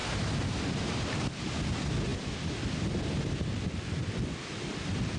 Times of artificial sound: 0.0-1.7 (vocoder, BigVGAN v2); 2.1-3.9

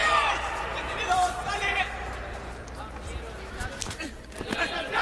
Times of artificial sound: 0.0-2.7 (vocoder, BigVGAN v2)

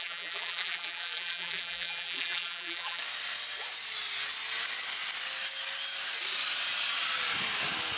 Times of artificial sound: 0.0-3.0 (vocoder, BigVGAN v2)